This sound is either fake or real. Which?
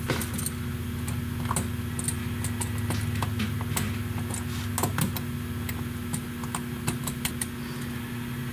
real